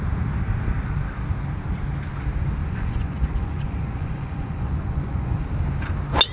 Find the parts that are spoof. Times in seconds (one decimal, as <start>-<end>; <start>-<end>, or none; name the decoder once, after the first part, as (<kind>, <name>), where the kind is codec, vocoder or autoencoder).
2.6-5.4 (vocoder, Vocos)